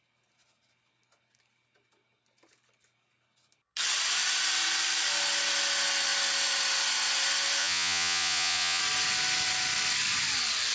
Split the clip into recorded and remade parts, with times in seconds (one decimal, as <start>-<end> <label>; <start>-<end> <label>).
0.0-7.6 recorded; 7.6-8.8 remade; 8.8-10.7 recorded